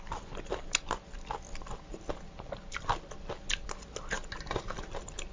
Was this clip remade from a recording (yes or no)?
no